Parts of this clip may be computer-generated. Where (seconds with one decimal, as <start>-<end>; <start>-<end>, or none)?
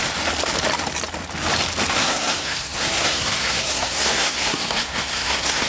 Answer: 2.0-5.7